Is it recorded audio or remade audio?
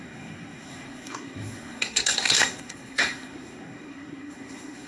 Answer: remade